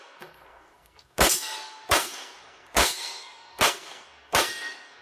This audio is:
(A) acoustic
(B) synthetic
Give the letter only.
B